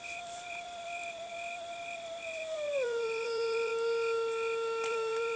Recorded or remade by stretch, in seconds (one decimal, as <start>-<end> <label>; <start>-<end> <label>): 0.0-3.7 remade; 3.7-4.9 recorded; 4.9-5.4 remade